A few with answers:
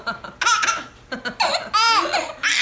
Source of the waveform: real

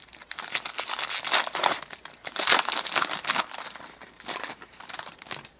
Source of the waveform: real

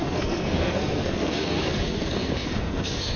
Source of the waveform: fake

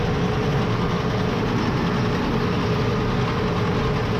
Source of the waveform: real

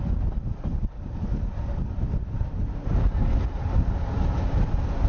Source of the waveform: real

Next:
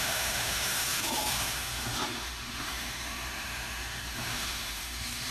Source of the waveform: fake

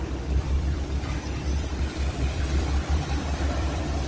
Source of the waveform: fake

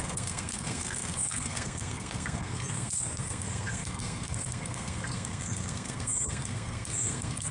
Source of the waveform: fake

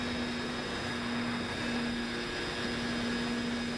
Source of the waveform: real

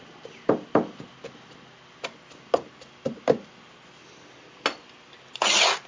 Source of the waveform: real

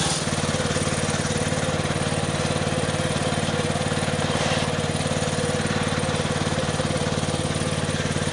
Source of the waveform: real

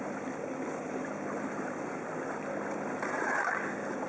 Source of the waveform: real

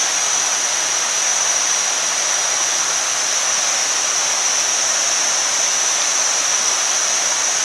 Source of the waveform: real